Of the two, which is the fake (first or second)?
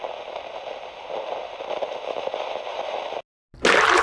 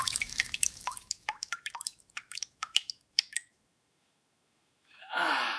second